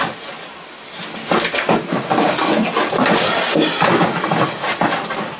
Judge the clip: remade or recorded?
recorded